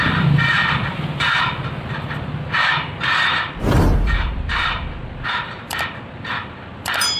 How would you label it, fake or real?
fake